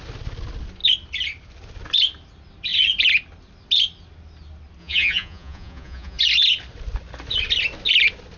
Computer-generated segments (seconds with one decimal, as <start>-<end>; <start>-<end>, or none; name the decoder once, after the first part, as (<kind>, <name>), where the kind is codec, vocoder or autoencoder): 4.8-6.2 (vocoder, Vocos)